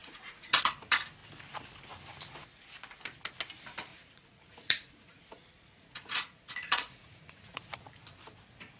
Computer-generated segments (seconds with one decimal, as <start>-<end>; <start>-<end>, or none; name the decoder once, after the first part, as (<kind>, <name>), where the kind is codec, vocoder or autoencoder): 0.0-0.6 (vocoder, Vocos); 3.9-7.7